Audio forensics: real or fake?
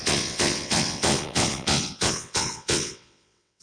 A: fake